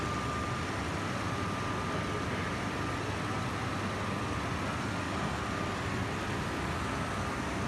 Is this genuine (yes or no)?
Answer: yes